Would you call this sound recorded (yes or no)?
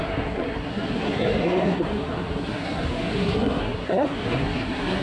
no